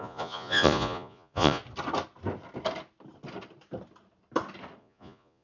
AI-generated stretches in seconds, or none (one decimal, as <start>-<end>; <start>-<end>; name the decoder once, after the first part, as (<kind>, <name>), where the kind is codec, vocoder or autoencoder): 0.0-1.6 (vocoder, Vocos); 4.8-5.4